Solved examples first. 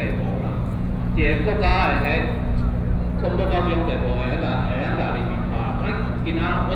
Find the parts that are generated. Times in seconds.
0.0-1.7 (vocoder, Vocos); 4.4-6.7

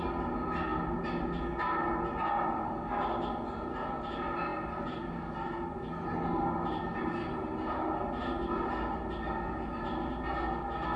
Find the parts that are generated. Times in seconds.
none

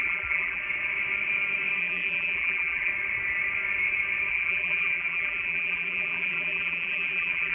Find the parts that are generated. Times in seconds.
0.0-0.6 (vocoder, BigVGAN v2); 1.8-2.9; 4.3-7.5

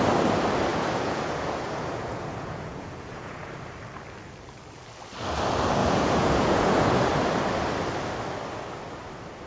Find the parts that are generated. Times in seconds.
0.7-3.5 (vocoder, Vocos); 5.8-7.1

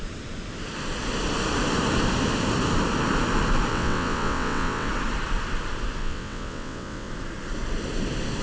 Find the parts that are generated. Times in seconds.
3.7-4.9 (vocoder, WaveNeXt); 6.0-7.1

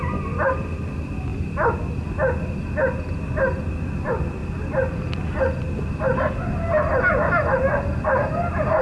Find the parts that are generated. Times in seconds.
none